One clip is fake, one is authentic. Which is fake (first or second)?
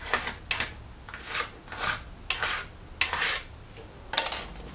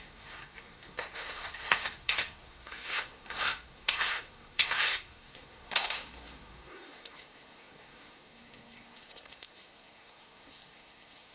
second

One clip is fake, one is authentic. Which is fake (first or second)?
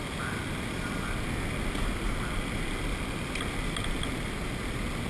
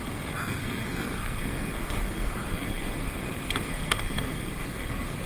second